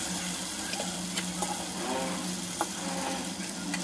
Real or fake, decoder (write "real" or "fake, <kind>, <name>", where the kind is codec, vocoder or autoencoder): real